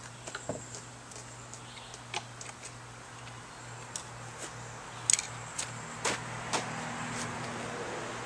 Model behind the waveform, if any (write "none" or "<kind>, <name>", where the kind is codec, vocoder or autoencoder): none